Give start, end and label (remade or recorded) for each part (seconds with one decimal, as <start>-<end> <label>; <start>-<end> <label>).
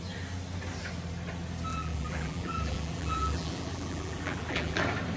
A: 0.0-1.7 recorded; 1.7-4.8 remade; 4.8-5.2 recorded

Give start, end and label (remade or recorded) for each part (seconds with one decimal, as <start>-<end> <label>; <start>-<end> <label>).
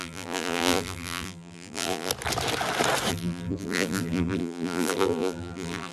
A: 0.0-2.1 remade; 2.1-3.1 recorded; 3.1-5.9 remade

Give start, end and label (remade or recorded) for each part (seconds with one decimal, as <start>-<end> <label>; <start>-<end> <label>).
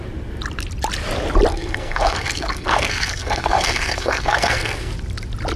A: 0.0-1.5 recorded; 1.5-4.9 remade; 4.9-5.6 recorded